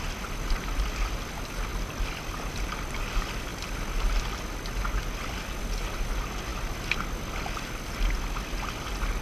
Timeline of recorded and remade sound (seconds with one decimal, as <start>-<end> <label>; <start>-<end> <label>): 0.0-9.2 recorded